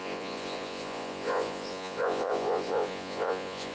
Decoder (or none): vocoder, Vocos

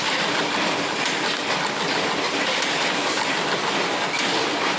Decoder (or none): none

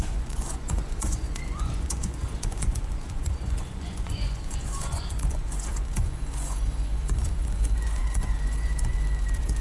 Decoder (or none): vocoder, Vocos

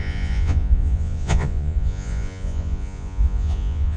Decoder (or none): vocoder, Vocos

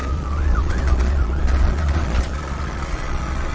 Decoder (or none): vocoder, Vocos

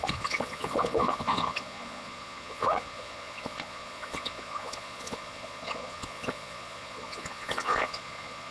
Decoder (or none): vocoder, Vocos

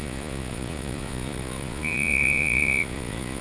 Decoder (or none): vocoder, Vocos